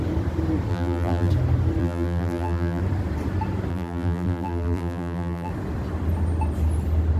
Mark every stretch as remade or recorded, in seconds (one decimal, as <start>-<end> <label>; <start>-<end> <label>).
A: 0.0-0.7 recorded; 0.7-1.3 remade; 1.3-1.8 recorded; 1.8-2.8 remade; 2.8-3.7 recorded; 3.7-5.5 remade; 5.5-7.2 recorded